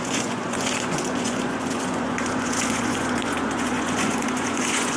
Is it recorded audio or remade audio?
remade